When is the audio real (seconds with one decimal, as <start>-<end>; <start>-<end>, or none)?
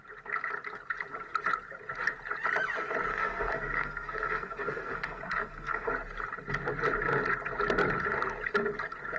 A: 0.0-3.1; 5.9-9.2